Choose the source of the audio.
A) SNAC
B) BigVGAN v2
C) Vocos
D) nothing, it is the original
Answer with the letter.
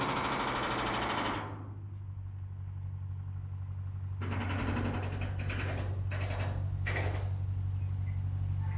D